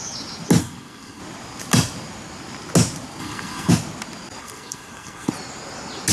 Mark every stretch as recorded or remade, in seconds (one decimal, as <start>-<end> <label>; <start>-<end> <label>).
0.0-0.6 recorded; 0.6-1.2 remade; 1.2-3.2 recorded; 3.2-3.7 remade; 3.7-4.4 recorded; 4.4-5.3 remade; 5.3-6.1 recorded

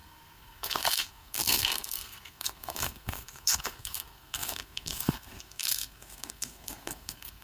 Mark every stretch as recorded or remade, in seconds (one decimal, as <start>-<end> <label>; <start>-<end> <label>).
0.0-7.4 remade

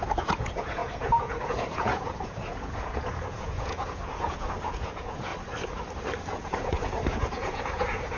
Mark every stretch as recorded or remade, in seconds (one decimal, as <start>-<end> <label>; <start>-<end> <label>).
0.0-5.3 remade; 5.3-6.3 recorded; 6.3-8.2 remade

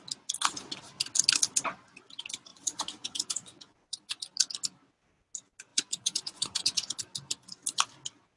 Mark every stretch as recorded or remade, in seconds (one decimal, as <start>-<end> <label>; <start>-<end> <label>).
0.0-2.5 recorded; 2.5-4.2 remade; 4.2-5.7 recorded; 5.7-7.0 remade; 7.0-8.4 recorded

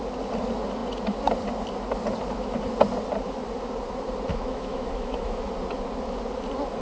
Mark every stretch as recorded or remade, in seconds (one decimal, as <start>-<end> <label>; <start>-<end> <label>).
0.0-4.3 recorded; 4.3-5.5 remade; 5.5-6.8 recorded

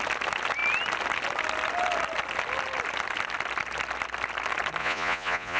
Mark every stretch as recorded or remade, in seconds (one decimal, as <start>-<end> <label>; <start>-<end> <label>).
0.0-4.8 recorded; 4.8-5.6 remade

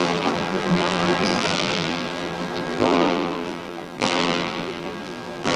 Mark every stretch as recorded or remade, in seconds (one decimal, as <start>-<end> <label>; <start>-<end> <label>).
0.0-5.6 remade